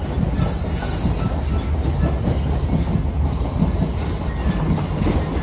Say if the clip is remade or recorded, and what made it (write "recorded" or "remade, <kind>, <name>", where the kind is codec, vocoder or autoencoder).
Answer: recorded